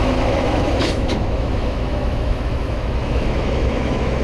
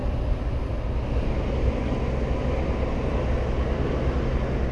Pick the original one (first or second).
second